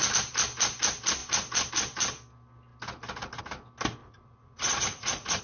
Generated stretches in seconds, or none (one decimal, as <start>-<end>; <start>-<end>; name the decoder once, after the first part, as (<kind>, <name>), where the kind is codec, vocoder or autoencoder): 4.0-5.4 (vocoder, Vocos)